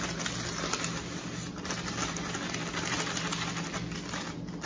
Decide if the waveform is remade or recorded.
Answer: recorded